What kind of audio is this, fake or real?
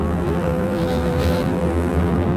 fake